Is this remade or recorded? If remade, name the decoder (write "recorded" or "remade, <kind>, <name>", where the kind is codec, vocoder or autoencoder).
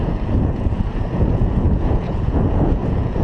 remade, vocoder, Vocos